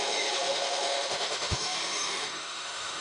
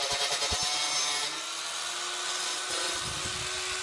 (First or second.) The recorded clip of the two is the second